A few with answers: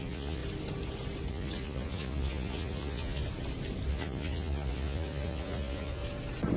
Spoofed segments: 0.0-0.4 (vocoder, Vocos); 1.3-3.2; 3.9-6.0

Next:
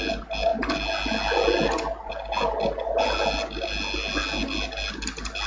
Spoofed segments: none

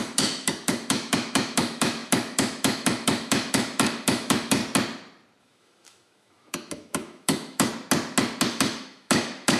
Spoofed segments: 0.0-4.6 (autoencoder, DAC-VAE); 5.4-7.7; 8.5-9.6

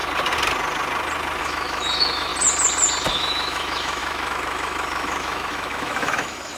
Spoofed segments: 1.4-2.3 (autoencoder, DAC-VAE); 3.1-6.6

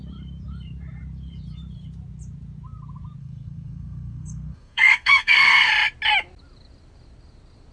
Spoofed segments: 3.2-5.7 (codec, SNAC)

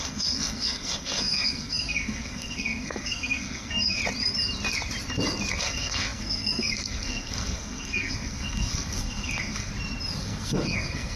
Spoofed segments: 0.0-4.0 (codec, SNAC); 5.5-9.7; 10.2-11.2

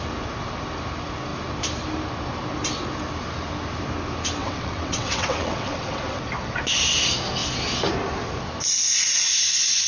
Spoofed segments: 4.4-6.2 (vocoder, WaveNeXt)